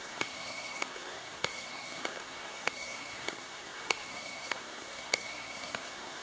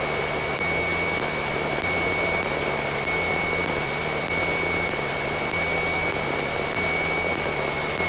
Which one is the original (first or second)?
second